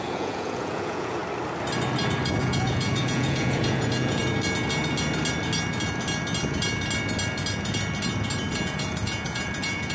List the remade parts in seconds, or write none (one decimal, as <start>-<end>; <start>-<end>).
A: 0.0-1.2; 2.4-4.2; 8.5-9.9